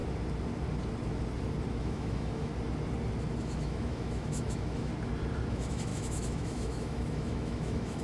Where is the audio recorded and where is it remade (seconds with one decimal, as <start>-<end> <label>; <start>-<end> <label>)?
0.0-1.8 recorded; 1.8-2.5 remade; 2.5-3.4 recorded; 3.4-4.9 remade; 4.9-5.5 recorded; 5.5-8.0 remade